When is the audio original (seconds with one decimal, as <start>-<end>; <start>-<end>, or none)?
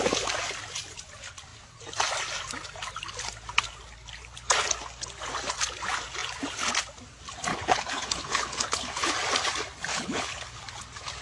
0.0-7.5; 9.1-9.9; 10.6-11.2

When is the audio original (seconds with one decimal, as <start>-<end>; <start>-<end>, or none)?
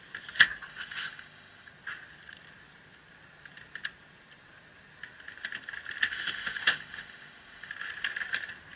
0.0-0.7; 1.7-6.1; 7.7-8.8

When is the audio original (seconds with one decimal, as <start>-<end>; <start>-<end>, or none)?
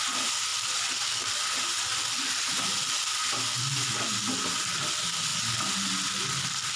0.0-6.8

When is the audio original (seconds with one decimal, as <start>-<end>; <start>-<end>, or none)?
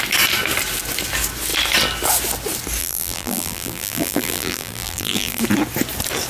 0.0-2.8; 5.4-6.3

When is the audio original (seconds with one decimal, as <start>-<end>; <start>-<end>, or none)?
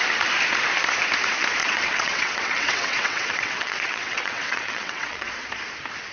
0.0-1.6; 5.3-6.1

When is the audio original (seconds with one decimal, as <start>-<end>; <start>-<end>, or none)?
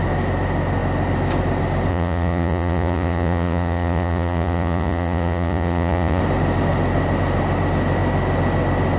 0.0-1.9; 6.2-9.0